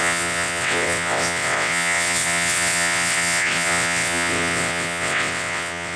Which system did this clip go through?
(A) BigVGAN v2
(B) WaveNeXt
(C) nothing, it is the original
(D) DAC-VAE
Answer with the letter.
B